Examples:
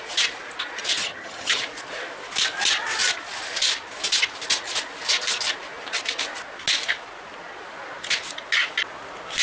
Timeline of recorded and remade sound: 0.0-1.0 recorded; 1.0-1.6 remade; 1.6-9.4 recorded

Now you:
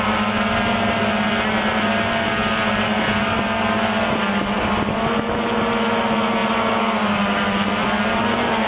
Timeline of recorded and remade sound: 0.0-8.7 recorded

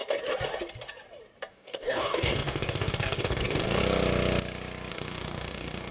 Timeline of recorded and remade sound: 0.0-1.5 recorded; 1.5-3.8 remade; 3.8-4.9 recorded; 4.9-5.9 remade

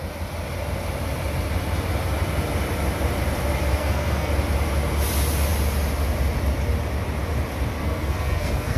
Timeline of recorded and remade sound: 0.0-3.7 recorded; 3.7-4.3 remade; 4.3-7.8 recorded; 7.8-8.8 remade

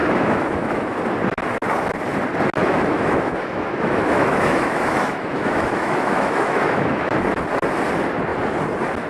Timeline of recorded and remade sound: 0.0-1.0 remade; 1.0-2.6 recorded; 2.6-7.1 remade; 7.1-9.1 recorded

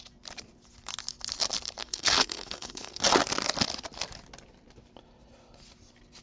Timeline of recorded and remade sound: 0.0-1.8 recorded; 1.8-3.0 remade; 3.0-6.2 recorded

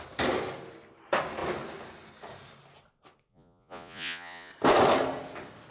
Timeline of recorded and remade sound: 0.0-3.3 recorded; 3.3-4.5 remade; 4.5-5.7 recorded

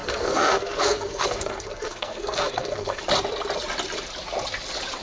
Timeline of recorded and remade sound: 0.0-3.0 remade; 3.0-5.0 recorded